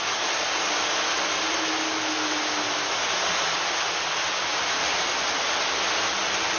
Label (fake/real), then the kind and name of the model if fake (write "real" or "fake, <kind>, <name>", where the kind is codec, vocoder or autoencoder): real